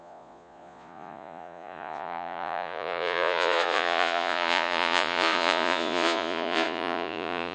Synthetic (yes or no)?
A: yes